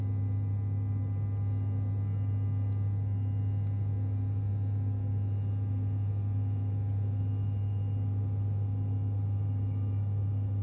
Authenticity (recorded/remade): recorded